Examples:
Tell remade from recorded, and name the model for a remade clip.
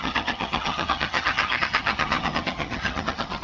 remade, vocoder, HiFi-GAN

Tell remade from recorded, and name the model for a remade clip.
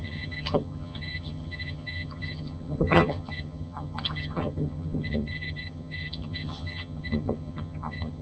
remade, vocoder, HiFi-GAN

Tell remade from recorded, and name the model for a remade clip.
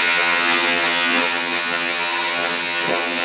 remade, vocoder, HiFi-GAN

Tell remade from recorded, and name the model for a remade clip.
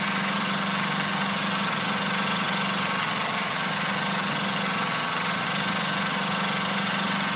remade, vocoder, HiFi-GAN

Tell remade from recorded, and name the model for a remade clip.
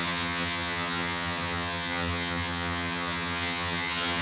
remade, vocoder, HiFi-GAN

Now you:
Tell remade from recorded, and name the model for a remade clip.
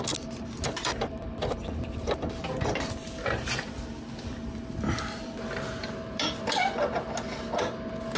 recorded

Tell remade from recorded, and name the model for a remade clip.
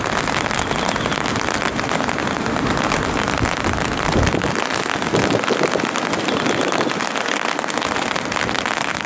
recorded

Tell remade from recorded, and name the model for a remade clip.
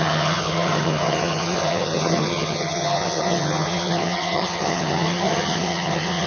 remade, vocoder, HiFi-GAN